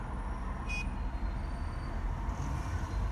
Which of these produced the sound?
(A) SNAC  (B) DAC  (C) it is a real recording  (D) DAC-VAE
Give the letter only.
C